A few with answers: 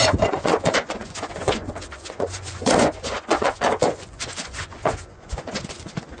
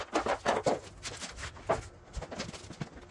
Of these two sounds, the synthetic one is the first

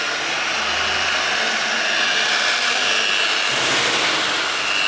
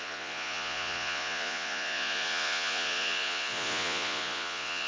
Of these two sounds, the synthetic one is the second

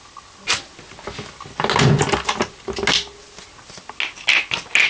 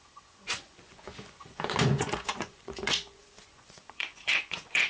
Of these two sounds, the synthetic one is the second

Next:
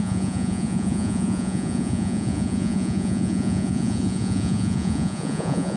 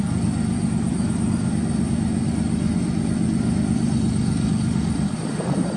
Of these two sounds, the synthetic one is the first